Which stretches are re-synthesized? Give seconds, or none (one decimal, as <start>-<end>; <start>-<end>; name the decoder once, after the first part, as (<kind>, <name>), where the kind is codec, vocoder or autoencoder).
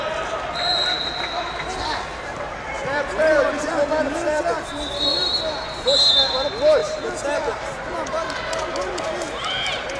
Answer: 2.1-5.6 (vocoder, BigVGAN v2)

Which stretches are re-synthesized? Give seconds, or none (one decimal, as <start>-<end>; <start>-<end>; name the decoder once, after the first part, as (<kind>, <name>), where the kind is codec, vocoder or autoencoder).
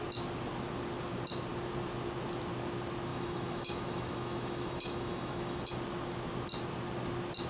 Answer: 3.1-5.7 (autoencoder, DAC-VAE)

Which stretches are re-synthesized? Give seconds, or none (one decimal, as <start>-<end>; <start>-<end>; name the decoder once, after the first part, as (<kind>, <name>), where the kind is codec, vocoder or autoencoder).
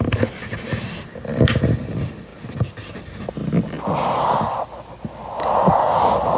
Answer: none